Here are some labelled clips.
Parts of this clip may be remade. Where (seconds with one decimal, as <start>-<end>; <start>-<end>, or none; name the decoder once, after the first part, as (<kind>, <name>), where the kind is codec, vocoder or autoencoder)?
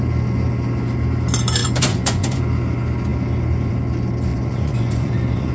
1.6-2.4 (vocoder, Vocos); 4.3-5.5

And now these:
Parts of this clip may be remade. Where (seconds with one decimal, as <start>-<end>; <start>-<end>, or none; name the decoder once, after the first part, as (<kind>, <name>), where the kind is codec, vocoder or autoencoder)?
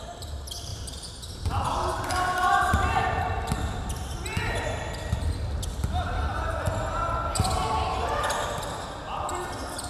none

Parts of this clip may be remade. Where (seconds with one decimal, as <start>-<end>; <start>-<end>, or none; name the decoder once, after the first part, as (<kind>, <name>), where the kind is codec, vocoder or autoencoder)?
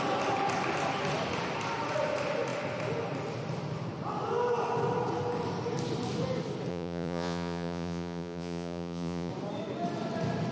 6.7-9.3 (vocoder, Vocos)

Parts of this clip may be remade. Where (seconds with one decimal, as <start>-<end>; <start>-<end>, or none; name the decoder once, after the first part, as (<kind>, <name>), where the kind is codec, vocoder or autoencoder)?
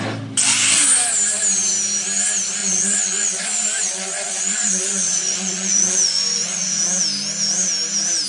2.6-6.8 (vocoder, Vocos)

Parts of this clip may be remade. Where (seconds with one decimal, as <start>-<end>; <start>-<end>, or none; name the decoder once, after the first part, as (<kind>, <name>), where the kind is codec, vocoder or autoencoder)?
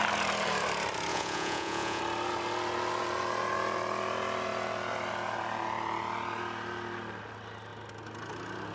1.1-2.0 (vocoder, Vocos)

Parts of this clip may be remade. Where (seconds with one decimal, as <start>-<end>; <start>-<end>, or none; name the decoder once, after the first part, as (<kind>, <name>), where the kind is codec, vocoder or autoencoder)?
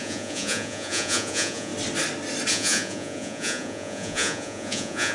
0.0-1.7 (vocoder, Vocos); 2.5-5.1